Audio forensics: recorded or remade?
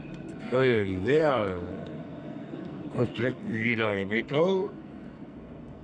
remade